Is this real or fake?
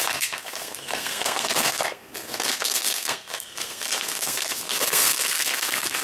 fake